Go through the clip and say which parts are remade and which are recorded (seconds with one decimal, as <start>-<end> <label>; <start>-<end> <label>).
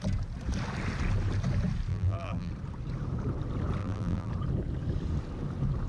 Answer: 0.0-1.9 recorded; 1.9-2.5 remade; 2.5-3.8 recorded; 3.8-4.3 remade; 4.3-5.9 recorded